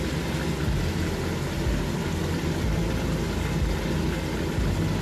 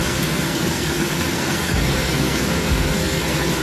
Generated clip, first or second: second